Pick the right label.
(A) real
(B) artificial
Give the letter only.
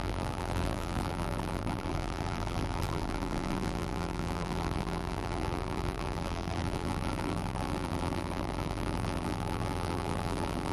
B